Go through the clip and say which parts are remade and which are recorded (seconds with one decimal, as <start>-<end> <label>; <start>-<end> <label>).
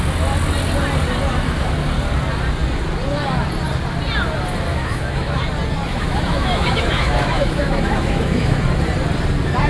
0.0-4.7 recorded; 4.7-5.4 remade; 5.4-5.9 recorded; 5.9-8.6 remade; 8.6-9.7 recorded